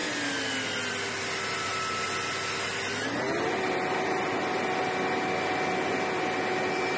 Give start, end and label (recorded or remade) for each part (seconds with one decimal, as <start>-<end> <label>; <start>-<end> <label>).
0.0-7.0 recorded